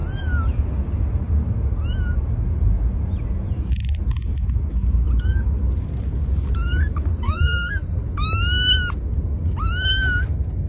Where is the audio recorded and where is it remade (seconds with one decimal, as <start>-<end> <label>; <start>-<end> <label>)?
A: 0.0-7.1 recorded; 7.1-8.0 remade; 8.0-10.7 recorded